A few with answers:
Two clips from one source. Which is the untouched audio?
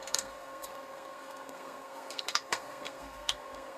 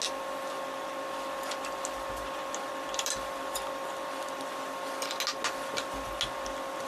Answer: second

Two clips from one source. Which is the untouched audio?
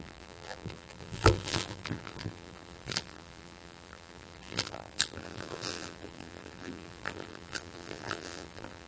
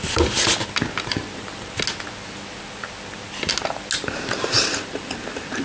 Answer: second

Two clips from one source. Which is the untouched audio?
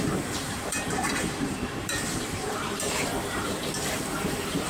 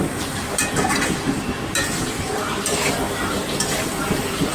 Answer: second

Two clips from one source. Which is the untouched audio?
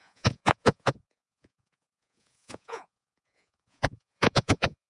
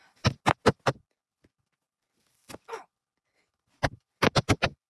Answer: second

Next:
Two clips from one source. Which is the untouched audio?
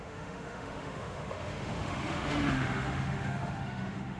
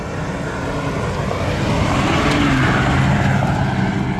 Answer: second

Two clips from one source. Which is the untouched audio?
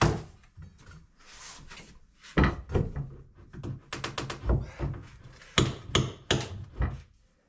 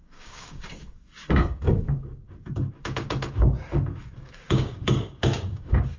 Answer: first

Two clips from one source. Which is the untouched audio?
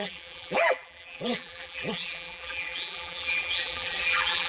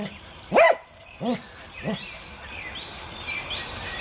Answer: second